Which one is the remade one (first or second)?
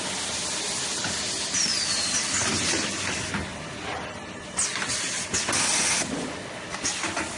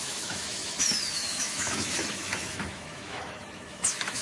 second